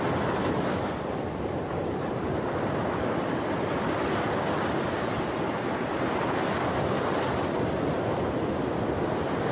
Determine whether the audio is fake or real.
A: real